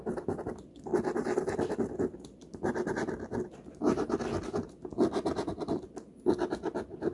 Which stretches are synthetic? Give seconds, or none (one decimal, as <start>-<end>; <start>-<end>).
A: none